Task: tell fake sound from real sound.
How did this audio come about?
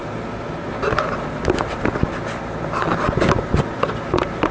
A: real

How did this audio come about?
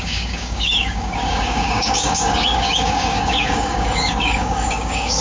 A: fake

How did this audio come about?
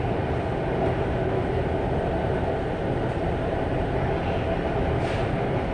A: real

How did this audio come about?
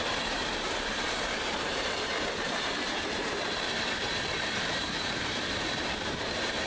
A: fake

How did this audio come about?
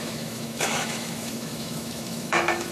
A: fake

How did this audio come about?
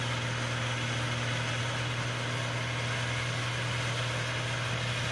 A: real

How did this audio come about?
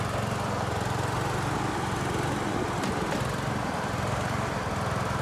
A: real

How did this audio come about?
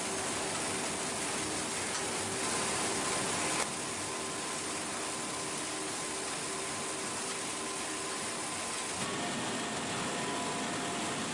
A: real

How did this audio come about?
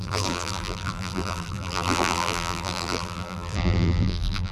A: fake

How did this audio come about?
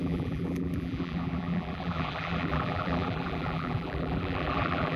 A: fake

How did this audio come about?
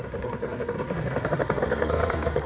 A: fake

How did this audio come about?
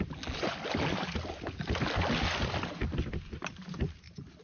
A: real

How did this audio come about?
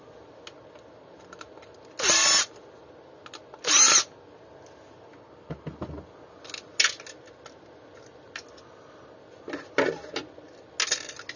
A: real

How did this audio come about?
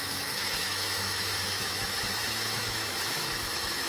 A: fake